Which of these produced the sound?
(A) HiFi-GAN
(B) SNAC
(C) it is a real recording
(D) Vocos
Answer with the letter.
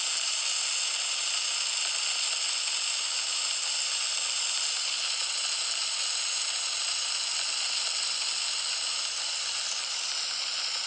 C